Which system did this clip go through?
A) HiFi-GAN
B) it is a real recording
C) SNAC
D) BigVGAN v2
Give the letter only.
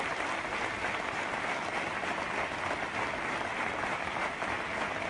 B